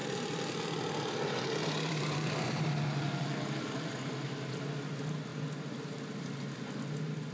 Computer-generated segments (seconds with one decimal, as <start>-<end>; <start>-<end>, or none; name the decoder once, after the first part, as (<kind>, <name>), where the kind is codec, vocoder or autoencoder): 0.0-0.8 (vocoder, BigVGAN v2); 1.6-4.0